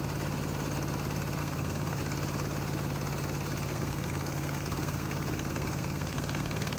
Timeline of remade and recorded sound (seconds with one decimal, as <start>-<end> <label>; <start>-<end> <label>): 0.0-1.4 recorded; 1.4-2.0 remade; 2.0-3.7 recorded; 3.7-6.8 remade